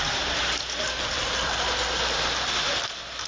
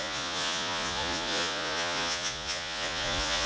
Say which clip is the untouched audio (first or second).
first